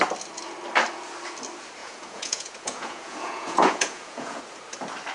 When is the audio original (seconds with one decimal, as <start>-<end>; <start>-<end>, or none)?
0.0-1.8; 4.4-5.1